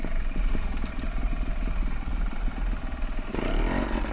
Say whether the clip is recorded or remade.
recorded